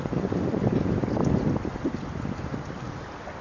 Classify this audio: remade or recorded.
recorded